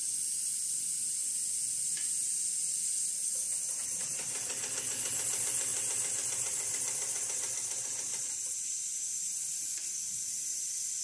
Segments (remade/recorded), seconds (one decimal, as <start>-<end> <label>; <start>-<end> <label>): 0.0-5.7 recorded; 5.7-8.3 remade; 8.3-11.0 recorded